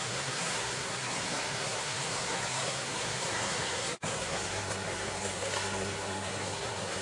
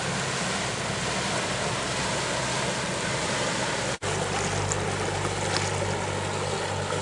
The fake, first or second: first